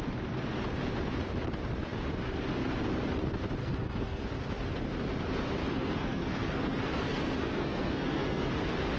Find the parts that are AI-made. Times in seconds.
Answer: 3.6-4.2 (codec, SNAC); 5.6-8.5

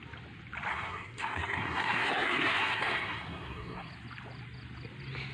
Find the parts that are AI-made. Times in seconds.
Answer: 0.7-3.9 (codec, SNAC)